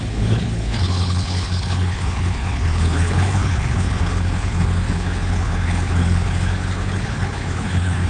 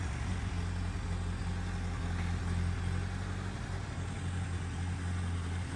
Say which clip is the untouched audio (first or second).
second